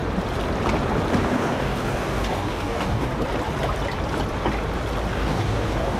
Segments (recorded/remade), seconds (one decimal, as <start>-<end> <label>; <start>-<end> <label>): 0.0-1.2 recorded; 1.2-3.1 remade; 3.1-5.1 recorded; 5.1-6.0 remade